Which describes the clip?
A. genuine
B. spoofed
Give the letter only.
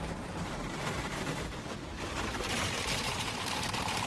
B